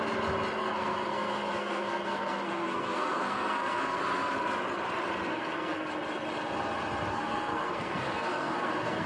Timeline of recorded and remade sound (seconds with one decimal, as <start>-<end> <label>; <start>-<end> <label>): 0.0-0.6 recorded; 0.6-4.0 remade; 4.0-5.3 recorded; 5.3-5.9 remade; 5.9-7.1 recorded; 7.1-9.1 remade